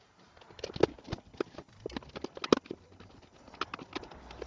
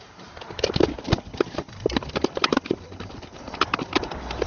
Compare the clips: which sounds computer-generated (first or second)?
second